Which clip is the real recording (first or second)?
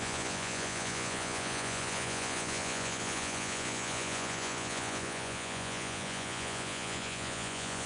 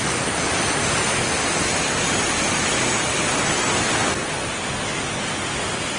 second